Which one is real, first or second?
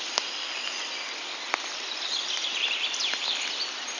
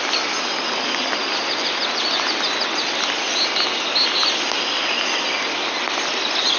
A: second